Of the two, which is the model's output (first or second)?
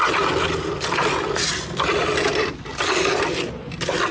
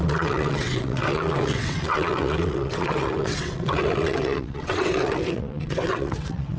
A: second